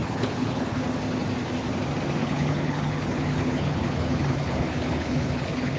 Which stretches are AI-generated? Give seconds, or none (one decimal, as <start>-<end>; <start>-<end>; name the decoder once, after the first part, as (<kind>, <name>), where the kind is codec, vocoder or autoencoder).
0.0-0.8 (codec, HILCodec); 2.2-5.8